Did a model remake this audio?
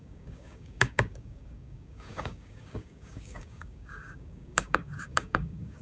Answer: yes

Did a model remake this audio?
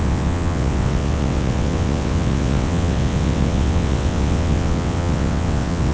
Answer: yes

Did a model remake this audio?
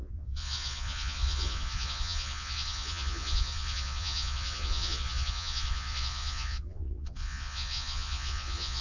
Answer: yes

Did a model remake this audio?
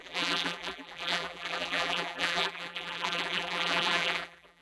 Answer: yes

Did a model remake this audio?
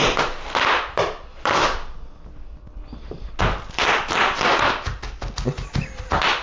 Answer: no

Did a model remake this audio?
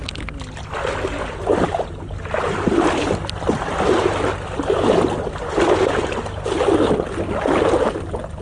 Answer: no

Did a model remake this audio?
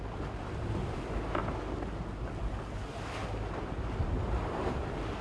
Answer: no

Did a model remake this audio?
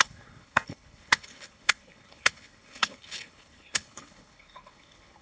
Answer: yes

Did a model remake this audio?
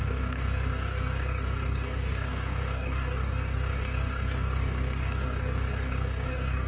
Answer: yes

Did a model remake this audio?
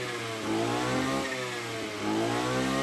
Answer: no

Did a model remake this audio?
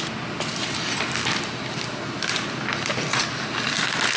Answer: no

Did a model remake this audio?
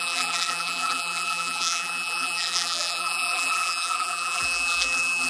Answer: yes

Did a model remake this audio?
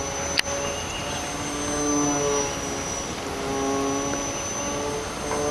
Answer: no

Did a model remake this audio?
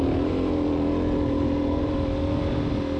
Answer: no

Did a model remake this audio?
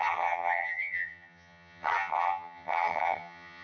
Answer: yes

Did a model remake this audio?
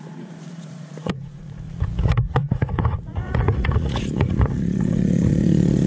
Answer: yes